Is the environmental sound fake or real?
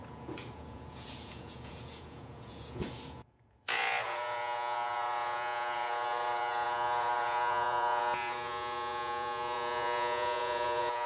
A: fake